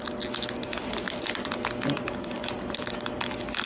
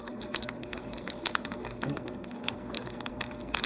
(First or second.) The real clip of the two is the first